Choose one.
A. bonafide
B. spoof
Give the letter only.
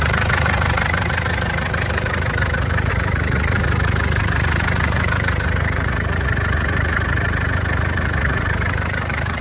B